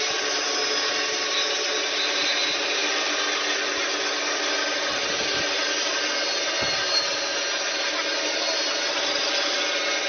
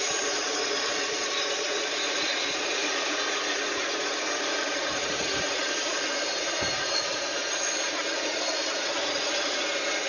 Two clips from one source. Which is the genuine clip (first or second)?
first